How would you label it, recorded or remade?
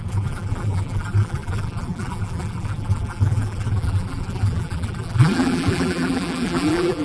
remade